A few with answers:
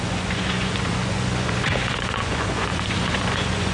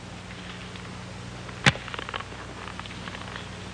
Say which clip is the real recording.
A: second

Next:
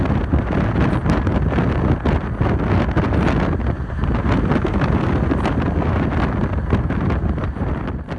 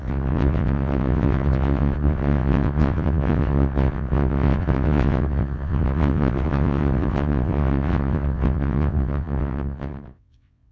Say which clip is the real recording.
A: first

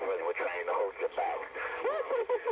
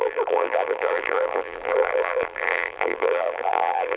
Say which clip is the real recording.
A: first